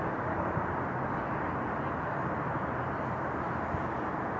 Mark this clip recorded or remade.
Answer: recorded